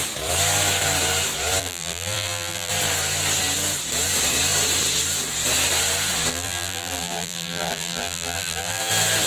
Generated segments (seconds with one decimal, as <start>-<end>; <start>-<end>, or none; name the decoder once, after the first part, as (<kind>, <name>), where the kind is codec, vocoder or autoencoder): 1.6-2.7 (vocoder, BigVGAN v2); 6.3-8.9